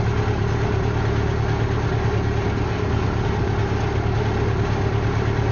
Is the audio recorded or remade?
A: recorded